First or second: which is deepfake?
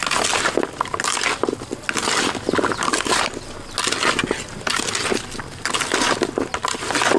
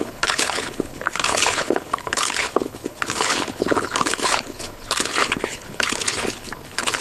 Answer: second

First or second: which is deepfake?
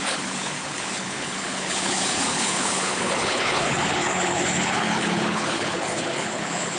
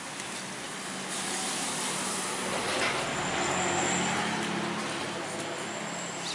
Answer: first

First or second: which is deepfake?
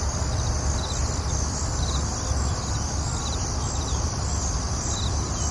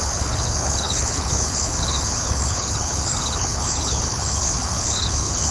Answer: second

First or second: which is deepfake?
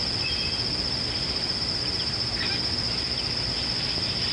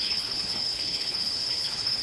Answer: second